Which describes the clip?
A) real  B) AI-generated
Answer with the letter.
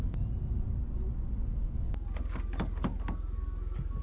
A